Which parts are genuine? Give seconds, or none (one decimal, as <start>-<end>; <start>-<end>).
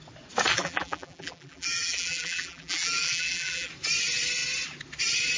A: 0.0-0.5; 3.7-5.4